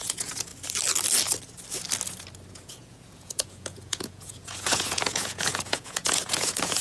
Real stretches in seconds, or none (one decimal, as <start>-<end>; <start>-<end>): 0.5-2.5